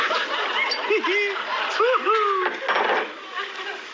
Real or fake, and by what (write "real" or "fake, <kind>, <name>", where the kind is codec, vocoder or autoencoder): real